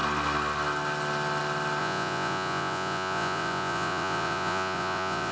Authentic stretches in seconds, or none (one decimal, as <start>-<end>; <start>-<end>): 0.0-1.8